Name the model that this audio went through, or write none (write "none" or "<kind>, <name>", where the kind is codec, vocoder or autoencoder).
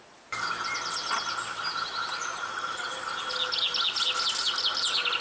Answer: none